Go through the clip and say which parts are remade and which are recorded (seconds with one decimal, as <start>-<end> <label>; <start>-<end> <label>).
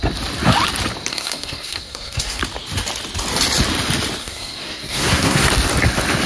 0.0-1.1 recorded; 1.1-2.4 remade; 2.4-4.2 recorded; 4.2-5.5 remade; 5.5-6.3 recorded